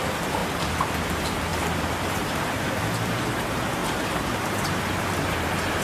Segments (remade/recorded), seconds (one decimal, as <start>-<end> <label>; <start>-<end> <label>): 0.0-0.4 remade; 0.4-0.9 recorded; 0.9-5.8 remade